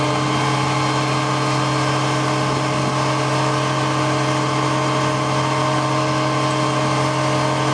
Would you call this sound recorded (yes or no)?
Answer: yes